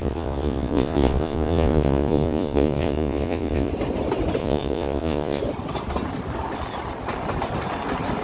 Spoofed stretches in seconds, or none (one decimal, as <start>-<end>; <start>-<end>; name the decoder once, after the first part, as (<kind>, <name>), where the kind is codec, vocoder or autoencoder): 0.0-3.7 (vocoder, Vocos); 4.4-5.4